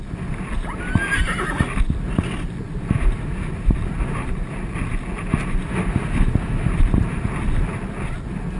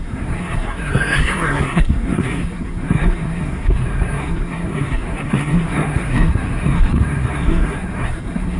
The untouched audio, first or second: first